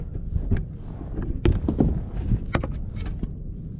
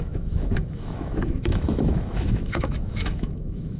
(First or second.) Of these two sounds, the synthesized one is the second